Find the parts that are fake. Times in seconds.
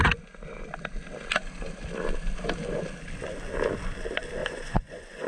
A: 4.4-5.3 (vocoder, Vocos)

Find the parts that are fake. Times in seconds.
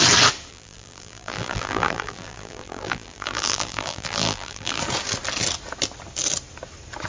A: 0.5-4.8 (vocoder, BigVGAN v2)